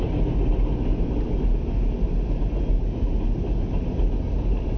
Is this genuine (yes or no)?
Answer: yes